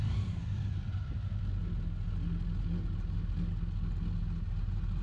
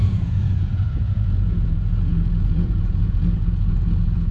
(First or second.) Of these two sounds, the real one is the first